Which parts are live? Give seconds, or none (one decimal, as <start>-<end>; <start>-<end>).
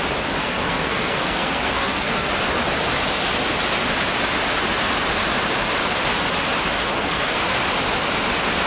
0.0-0.4; 2.3-6.9; 7.4-8.7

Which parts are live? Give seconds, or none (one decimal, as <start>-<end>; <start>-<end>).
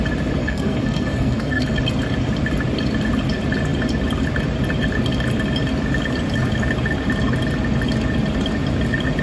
0.0-0.4; 1.8-9.2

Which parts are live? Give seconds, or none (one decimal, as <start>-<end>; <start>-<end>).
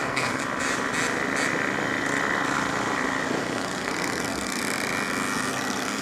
0.4-3.4; 4.6-5.5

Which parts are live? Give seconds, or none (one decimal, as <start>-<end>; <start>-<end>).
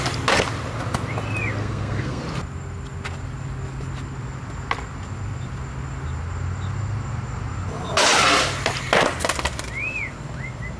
0.0-1.6; 2.2-10.8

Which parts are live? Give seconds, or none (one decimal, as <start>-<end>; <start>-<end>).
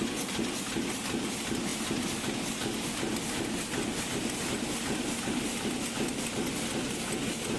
0.0-7.6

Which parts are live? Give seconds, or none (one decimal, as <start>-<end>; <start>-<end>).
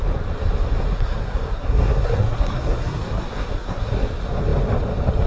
0.0-0.9; 4.1-5.3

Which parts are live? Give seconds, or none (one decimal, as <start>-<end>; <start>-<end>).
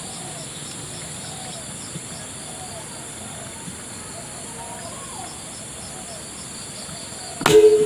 0.0-7.9